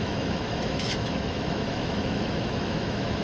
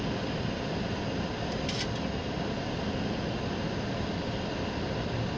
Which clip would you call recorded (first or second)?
second